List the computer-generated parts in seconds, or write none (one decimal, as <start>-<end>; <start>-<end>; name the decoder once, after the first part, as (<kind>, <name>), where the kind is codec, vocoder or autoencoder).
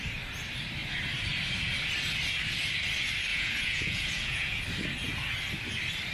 3.3-4.6 (vocoder, Vocos)